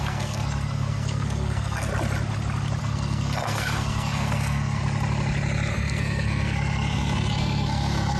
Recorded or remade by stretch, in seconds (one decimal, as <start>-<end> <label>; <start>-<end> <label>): 0.0-1.9 remade; 1.9-2.8 recorded; 2.8-4.8 remade; 4.8-5.7 recorded; 5.7-8.2 remade